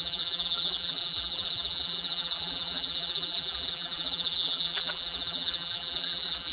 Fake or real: fake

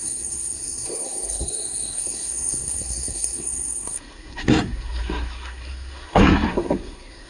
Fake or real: fake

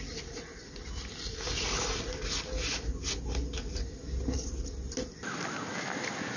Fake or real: real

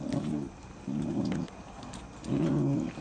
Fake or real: real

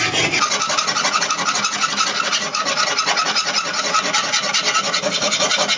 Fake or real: real